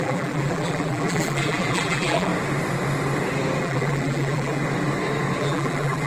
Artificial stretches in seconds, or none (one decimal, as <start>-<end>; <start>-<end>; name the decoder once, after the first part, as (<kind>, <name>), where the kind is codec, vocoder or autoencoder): 0.0-2.3 (vocoder, BigVGAN v2); 3.6-4.6; 5.4-6.1

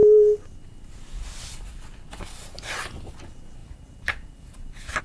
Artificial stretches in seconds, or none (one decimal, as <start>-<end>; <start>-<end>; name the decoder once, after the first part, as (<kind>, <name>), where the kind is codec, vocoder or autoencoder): 3.6-5.0 (vocoder, BigVGAN v2)

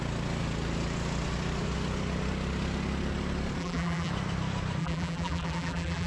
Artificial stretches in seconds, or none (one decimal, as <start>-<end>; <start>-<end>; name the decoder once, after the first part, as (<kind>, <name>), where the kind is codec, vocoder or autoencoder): 3.6-4.1 (vocoder, BigVGAN v2); 4.8-6.1

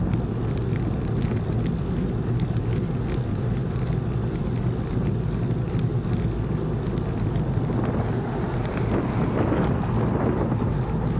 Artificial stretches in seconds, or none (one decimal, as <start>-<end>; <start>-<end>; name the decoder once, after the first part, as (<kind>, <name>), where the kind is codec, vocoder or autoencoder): none

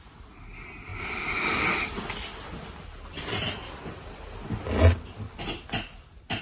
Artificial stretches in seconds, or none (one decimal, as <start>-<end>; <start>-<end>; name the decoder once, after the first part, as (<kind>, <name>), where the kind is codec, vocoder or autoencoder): 0.9-4.7 (vocoder, BigVGAN v2)

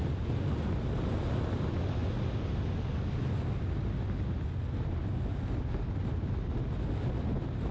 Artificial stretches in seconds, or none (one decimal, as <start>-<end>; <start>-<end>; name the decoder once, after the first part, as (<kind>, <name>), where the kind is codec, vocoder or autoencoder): none